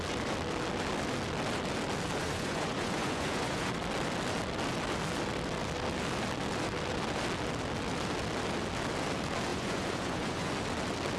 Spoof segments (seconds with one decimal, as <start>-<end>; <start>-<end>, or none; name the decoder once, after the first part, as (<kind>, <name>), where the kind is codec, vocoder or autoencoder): 2.2-3.7 (vocoder, Vocos); 9.5-10.5

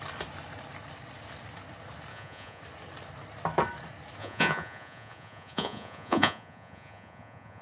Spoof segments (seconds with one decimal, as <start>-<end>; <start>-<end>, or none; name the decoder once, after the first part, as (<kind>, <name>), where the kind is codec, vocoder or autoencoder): 2.1-2.6 (vocoder, Vocos); 4.2-7.6

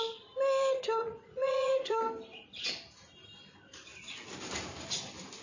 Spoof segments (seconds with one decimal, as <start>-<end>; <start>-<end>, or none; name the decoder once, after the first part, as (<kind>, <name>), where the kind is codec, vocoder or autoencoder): 1.0-2.0 (vocoder, Vocos)